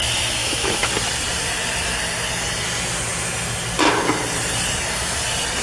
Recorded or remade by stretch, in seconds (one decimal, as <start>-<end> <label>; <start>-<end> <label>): 0.0-0.4 recorded; 0.4-0.9 remade; 0.9-5.6 recorded

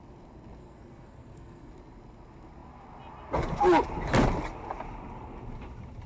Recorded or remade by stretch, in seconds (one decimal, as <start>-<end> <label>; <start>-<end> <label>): 0.0-0.6 recorded; 0.6-1.7 remade; 1.7-6.1 recorded

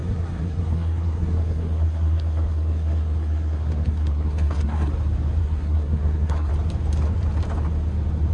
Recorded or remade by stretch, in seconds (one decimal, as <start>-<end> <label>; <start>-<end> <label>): 0.0-4.9 remade; 4.9-5.4 recorded; 5.4-6.5 remade; 6.5-8.3 recorded